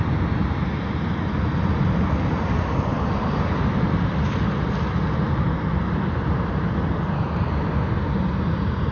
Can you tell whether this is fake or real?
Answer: real